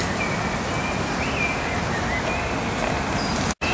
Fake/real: real